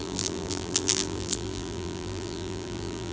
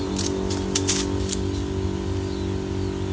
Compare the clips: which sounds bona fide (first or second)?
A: second